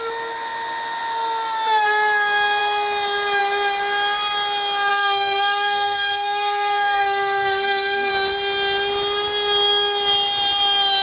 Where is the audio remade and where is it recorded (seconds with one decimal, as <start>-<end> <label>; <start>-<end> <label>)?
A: 0.0-4.9 recorded; 4.9-8.1 remade; 8.1-11.0 recorded